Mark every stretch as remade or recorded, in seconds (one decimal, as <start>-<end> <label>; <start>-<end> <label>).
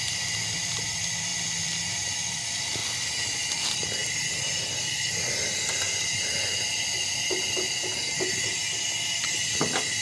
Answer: 0.0-10.0 recorded